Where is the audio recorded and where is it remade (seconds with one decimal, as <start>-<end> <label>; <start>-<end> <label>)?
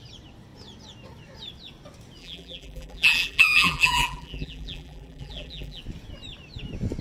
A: 0.0-2.2 recorded; 2.2-5.8 remade; 5.8-7.0 recorded